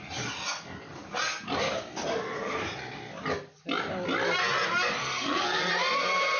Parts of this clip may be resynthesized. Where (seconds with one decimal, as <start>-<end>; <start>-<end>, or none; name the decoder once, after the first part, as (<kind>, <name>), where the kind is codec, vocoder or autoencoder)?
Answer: 5.0-5.7 (codec, SNAC)